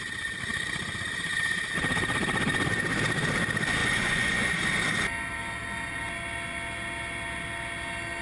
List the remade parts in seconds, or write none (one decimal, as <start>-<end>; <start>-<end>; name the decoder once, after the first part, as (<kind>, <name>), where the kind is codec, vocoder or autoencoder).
3.8-4.6 (vocoder, Vocos)